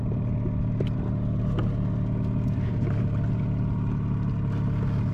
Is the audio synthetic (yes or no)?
no